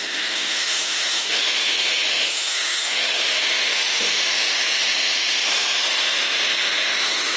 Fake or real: fake